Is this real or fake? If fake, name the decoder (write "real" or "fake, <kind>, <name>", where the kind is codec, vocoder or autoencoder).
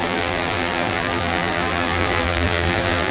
fake, vocoder, BigVGAN v2